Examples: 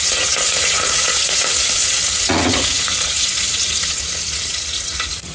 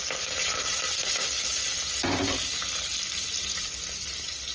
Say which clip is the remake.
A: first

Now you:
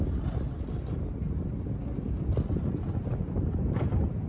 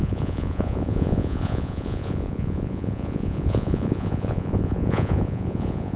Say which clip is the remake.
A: second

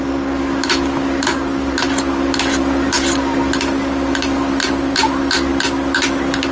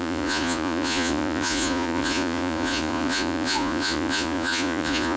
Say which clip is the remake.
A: second